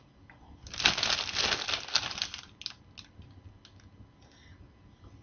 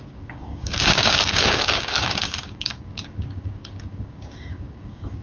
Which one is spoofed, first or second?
second